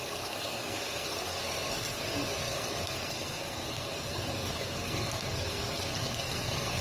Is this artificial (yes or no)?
yes